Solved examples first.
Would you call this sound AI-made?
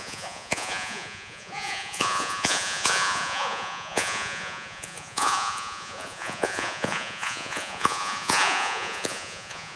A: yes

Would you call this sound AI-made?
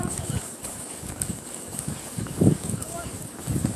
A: yes